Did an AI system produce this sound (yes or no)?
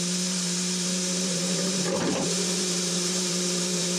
yes